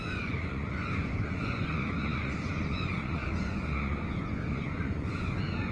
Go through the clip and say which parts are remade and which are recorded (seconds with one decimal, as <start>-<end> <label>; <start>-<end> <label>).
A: 0.0-5.7 remade